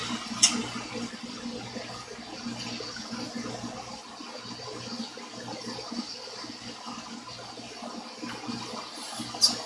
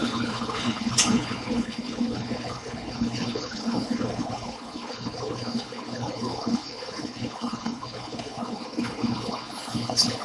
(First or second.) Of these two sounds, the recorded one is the first